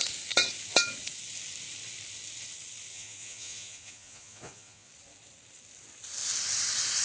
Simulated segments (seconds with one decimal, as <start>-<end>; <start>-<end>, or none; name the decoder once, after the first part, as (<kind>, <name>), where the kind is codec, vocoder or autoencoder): 2.9-4.9 (vocoder, Vocos)

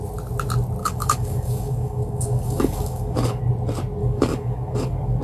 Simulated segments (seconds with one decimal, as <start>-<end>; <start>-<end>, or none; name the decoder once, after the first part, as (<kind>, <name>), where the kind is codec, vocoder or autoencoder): 0.8-3.4 (codec, DAC); 4.0-5.2

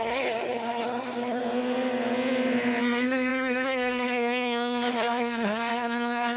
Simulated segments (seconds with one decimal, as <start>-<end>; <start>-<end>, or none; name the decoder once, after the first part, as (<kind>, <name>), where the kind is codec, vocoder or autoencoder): 0.0-1.4 (codec, SNAC); 2.8-6.4